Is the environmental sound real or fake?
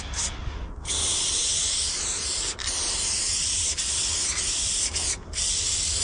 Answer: real